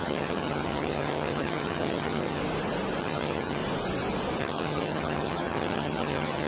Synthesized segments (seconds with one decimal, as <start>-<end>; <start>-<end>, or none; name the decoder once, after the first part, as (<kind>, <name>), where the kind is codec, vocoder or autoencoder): 0.0-2.4 (vocoder, HiFi-GAN); 3.0-3.6; 4.4-6.5